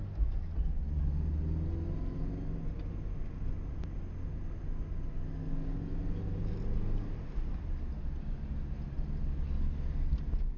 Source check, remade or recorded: recorded